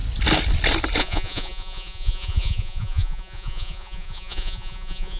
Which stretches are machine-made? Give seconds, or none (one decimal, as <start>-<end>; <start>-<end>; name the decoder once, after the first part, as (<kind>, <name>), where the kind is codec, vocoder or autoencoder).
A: 1.0-5.2 (vocoder, Vocos)

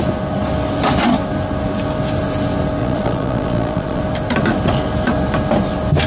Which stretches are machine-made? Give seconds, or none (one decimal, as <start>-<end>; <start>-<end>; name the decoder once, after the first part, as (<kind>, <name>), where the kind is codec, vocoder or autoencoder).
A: 2.8-4.0 (vocoder, Vocos)

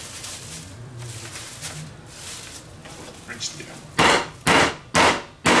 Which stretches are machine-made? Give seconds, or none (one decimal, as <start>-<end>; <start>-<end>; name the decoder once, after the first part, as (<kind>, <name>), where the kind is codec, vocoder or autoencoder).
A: 0.0-1.5 (vocoder, BigVGAN v2); 2.8-4.7

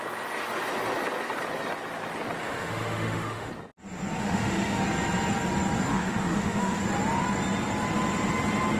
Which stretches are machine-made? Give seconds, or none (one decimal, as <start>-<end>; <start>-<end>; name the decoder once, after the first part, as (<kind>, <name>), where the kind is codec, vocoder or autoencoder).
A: 2.4-3.5 (autoencoder, DAC-VAE); 4.2-4.8; 5.9-6.8

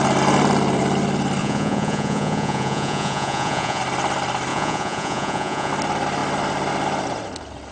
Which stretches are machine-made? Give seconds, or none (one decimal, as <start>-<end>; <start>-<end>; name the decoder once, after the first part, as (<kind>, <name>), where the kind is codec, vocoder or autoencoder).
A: 1.4-3.8 (vocoder, Vocos); 4.5-5.7

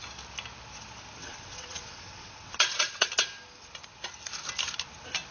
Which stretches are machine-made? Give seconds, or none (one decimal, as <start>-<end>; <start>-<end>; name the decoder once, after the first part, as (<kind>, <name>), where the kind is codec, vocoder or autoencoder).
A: 1.2-3.1 (vocoder, WaveNeXt)

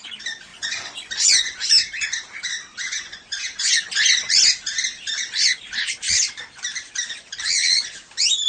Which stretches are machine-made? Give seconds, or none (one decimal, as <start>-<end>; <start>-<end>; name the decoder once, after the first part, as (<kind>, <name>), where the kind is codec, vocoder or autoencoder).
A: 0.5-1.7 (vocoder, Vocos); 2.7-3.9

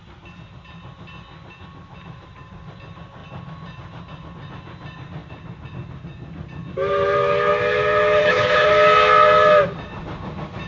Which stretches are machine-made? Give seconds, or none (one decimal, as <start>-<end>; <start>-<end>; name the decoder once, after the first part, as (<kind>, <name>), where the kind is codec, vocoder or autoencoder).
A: 8.2-8.7 (codec, HILCodec)